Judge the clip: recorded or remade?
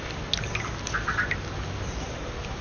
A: recorded